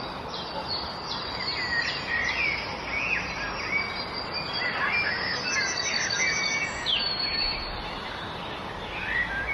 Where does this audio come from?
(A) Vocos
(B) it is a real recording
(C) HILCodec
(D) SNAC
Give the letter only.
B